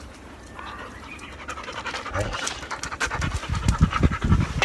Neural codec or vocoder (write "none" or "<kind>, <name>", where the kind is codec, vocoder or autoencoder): none